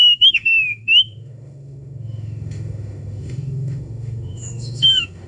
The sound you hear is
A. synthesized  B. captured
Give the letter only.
A